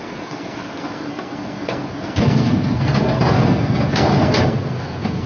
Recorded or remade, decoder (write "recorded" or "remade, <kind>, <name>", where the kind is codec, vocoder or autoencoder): remade, codec, SNAC